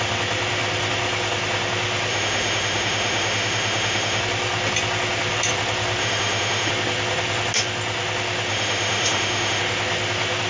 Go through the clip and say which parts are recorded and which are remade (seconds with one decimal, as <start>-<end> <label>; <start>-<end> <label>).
0.0-2.1 recorded; 2.1-4.2 remade; 4.2-6.0 recorded; 6.0-6.7 remade; 6.7-8.5 recorded; 8.5-9.6 remade; 9.6-10.5 recorded